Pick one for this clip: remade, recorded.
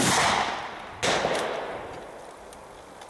recorded